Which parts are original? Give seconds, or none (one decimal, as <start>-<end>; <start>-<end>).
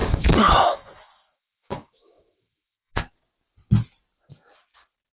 2.9-5.2